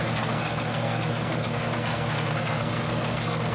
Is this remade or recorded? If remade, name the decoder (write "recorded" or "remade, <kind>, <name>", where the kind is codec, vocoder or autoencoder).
remade, codec, SNAC